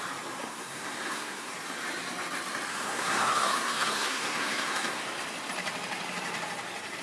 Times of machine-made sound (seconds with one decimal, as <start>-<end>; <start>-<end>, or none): 0.4-1.5; 2.7-5.0